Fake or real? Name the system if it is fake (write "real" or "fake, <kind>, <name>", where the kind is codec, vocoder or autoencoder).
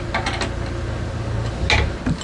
real